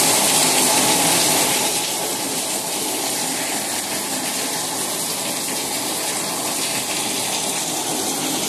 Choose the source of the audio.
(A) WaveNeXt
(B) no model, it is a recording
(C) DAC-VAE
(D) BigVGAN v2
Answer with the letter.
B